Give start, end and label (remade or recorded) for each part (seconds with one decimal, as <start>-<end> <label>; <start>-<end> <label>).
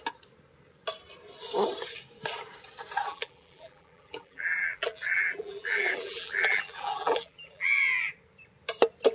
0.0-3.1 recorded; 3.1-8.1 remade; 8.1-9.1 recorded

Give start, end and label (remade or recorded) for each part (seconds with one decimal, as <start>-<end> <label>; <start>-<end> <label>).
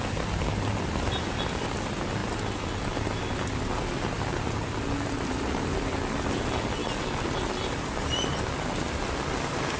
0.0-9.8 recorded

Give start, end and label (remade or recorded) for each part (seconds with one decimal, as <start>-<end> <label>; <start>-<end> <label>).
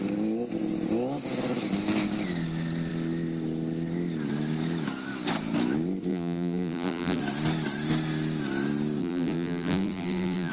0.0-6.1 recorded; 6.1-7.2 remade; 7.2-9.0 recorded; 9.0-10.5 remade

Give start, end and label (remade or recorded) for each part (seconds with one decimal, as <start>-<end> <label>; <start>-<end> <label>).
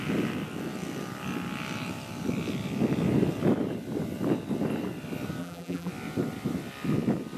0.0-5.4 recorded; 5.4-5.9 remade; 5.9-7.4 recorded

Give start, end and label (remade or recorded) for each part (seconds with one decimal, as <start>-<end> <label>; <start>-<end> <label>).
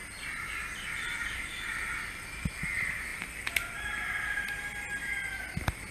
0.0-5.9 recorded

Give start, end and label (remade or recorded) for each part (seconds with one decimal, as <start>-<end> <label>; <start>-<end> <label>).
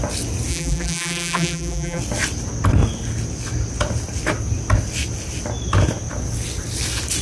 0.0-0.5 recorded; 0.5-2.0 remade; 2.0-7.2 recorded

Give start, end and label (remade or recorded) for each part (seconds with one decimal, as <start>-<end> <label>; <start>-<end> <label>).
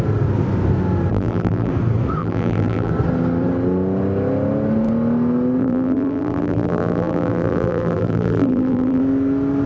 0.0-1.1 recorded; 1.1-1.7 remade; 1.7-2.2 recorded; 2.2-2.9 remade; 2.9-5.6 recorded; 5.6-9.0 remade; 9.0-9.7 recorded